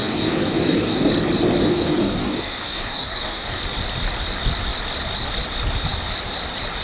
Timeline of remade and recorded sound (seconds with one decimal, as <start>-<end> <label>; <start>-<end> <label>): 0.0-1.1 remade; 1.1-1.6 recorded; 1.6-3.6 remade; 3.6-6.8 recorded